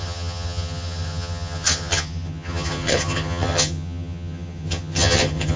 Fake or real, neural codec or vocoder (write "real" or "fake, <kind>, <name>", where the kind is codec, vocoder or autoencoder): fake, vocoder, HiFi-GAN